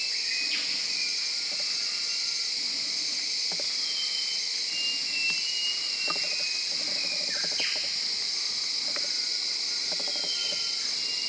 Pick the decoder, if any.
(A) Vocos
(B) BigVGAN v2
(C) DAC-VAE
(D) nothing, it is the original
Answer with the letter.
D